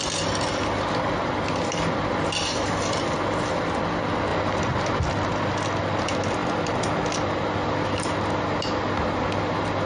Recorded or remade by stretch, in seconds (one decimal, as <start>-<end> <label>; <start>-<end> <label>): 0.0-9.9 recorded